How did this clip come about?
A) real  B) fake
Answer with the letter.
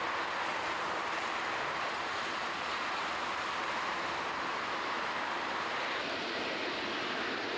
A